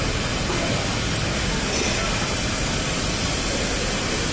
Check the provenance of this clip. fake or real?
real